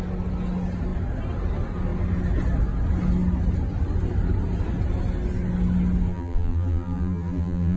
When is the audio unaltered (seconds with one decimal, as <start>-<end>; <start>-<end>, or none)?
0.0-6.1